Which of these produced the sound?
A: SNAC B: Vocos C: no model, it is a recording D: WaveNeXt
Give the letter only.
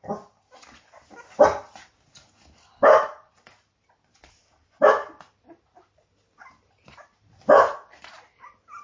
C